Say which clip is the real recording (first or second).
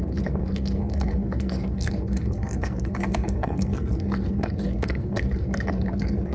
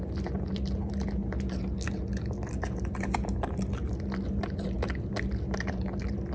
second